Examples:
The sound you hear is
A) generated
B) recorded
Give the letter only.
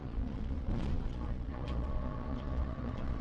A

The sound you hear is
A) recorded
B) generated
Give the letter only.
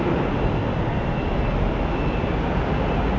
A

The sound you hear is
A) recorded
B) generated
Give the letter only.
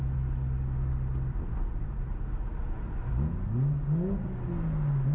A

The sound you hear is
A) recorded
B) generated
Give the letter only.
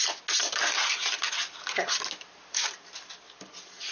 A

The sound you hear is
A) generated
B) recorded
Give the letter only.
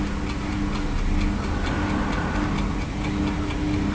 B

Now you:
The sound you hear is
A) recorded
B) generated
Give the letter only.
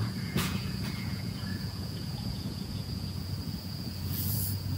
B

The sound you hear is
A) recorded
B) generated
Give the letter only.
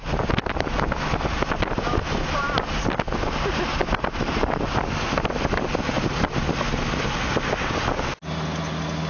A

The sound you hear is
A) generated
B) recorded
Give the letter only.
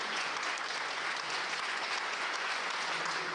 A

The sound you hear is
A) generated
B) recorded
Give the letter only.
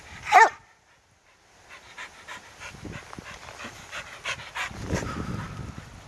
B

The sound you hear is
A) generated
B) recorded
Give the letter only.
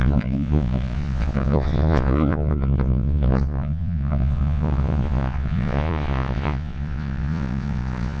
A